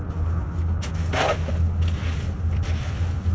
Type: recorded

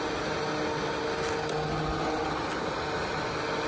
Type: recorded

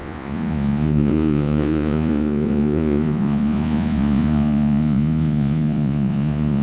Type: remade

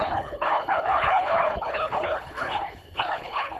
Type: remade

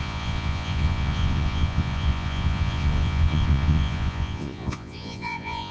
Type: remade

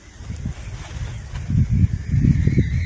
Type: recorded